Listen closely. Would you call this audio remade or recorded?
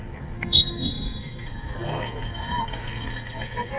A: remade